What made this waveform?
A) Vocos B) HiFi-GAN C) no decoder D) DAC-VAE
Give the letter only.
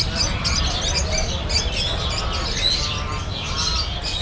C